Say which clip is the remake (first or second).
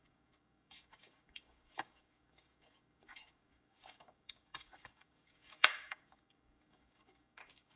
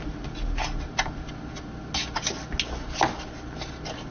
first